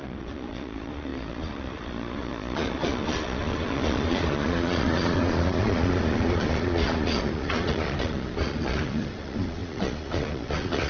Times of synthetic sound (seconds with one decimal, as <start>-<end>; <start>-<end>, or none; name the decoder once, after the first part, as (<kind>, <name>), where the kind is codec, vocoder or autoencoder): 0.0-10.9 (vocoder, Vocos)